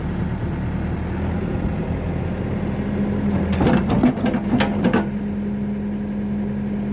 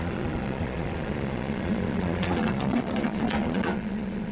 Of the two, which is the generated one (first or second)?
second